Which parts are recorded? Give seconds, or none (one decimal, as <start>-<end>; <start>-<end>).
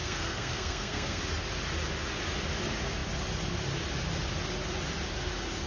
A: 1.2-5.7